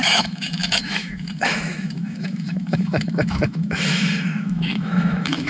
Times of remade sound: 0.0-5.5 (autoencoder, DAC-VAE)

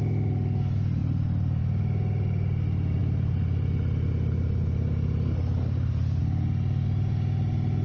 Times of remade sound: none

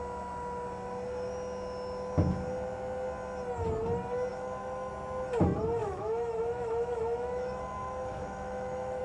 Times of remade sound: 4.3-4.9 (autoencoder, DAC-VAE); 5.8-9.0

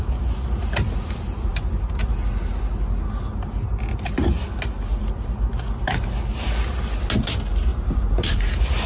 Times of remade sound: 7.7-8.9 (vocoder, BigVGAN v2)

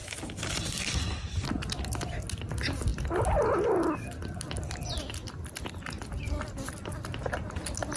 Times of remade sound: none